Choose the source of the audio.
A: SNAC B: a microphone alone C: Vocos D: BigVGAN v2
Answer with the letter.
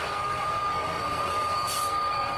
A